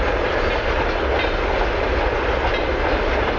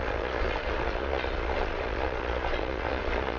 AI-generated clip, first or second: second